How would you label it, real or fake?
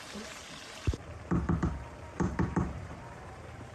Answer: fake